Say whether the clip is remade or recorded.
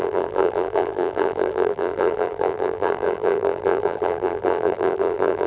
remade